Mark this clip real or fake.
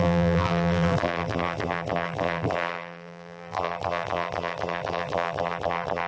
fake